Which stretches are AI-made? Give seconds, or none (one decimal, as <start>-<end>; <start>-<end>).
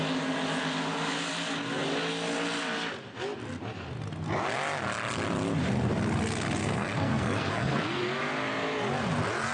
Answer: 6.6-8.0